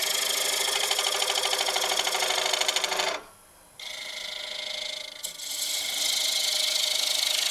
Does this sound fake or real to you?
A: real